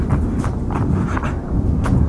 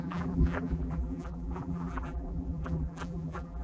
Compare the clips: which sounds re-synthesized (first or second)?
second